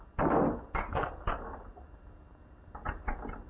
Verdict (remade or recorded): recorded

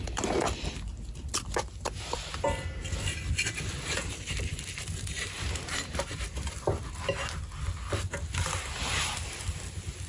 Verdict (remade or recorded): recorded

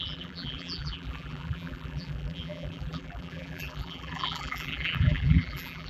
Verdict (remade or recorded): remade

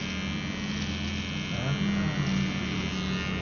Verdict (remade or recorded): recorded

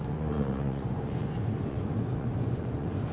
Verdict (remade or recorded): remade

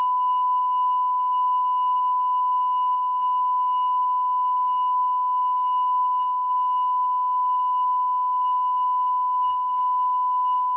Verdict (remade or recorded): remade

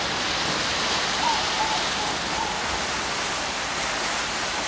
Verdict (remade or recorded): recorded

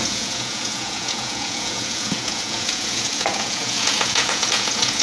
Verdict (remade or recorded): remade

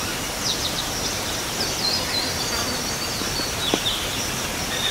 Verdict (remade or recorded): recorded